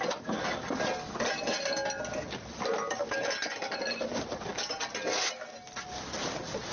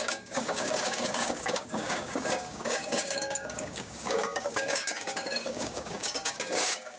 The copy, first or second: second